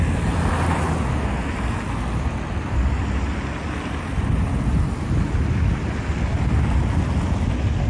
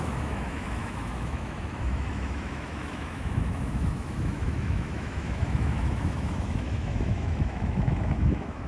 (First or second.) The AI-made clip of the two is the second